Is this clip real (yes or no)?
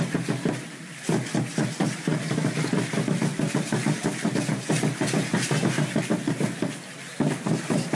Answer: yes